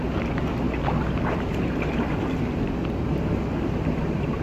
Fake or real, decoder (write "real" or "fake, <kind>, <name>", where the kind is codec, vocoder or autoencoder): real